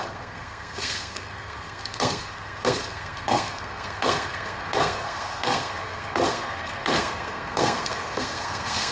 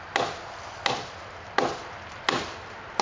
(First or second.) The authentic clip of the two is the second